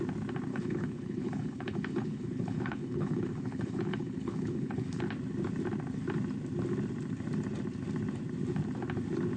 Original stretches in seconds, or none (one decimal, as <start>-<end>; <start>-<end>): 0.0-0.5; 5.0-9.4